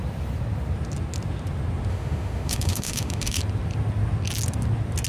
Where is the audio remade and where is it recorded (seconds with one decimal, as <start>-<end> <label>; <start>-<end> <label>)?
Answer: 0.0-1.9 recorded; 1.9-3.4 remade; 3.4-5.1 recorded